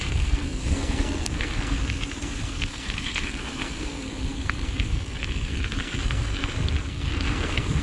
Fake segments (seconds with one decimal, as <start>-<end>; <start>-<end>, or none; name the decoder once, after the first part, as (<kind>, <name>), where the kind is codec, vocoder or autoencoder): 0.0-7.8 (codec, SNAC)